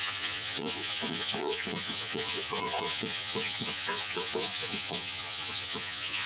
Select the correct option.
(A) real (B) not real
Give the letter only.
B